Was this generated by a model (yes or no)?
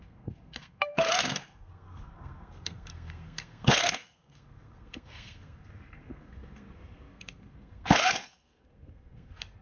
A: yes